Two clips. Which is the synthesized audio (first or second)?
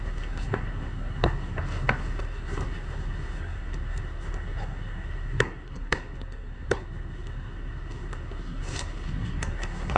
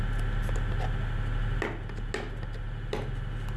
first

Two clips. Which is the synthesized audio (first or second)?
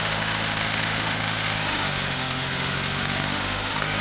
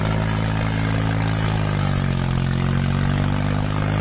first